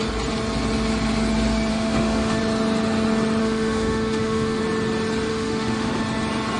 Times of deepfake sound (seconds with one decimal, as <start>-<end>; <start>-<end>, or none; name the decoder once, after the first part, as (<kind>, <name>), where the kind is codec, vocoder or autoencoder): 1.7-2.4 (autoencoder, DAC-VAE); 3.4-4.6; 5.3-6.0